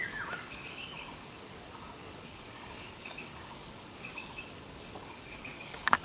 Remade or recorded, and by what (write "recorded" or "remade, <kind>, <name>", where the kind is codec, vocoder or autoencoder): remade, codec, DAC